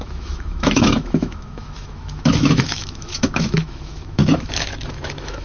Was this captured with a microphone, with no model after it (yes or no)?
no